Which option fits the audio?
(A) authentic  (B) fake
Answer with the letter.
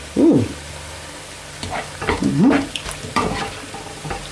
B